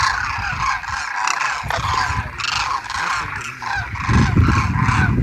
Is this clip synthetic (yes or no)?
no